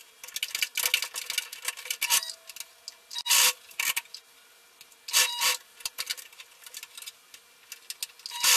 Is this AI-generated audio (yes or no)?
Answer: no